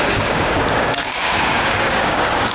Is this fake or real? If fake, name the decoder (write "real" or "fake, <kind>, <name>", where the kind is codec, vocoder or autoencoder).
fake, codec, DAC